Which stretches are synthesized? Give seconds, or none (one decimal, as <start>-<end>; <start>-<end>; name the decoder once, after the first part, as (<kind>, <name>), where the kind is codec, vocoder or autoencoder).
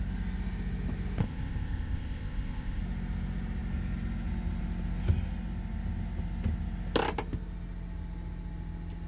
1.2-2.8 (codec, ZipCodec)